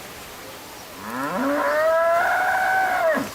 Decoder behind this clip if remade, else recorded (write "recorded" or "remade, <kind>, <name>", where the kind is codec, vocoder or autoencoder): recorded